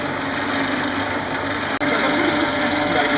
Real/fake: real